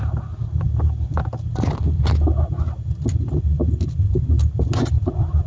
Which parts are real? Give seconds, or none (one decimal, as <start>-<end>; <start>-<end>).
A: 0.0-5.5